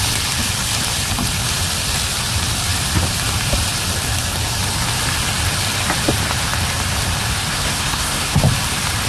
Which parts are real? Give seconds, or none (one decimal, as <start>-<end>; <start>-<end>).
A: 0.0-7.5; 8.4-9.1